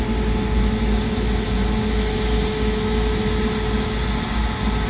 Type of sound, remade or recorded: recorded